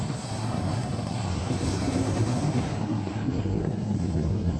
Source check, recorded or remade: remade